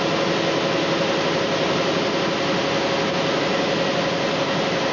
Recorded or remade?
recorded